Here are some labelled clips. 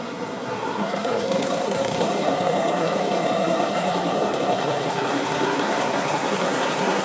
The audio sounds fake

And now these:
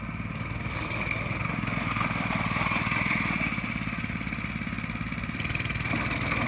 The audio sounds real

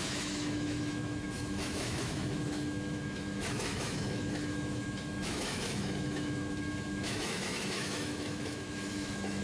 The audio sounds fake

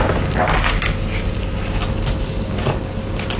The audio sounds real